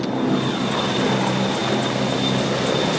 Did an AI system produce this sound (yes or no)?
no